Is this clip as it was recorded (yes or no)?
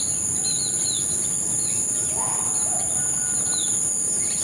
yes